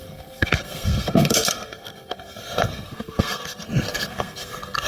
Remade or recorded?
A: remade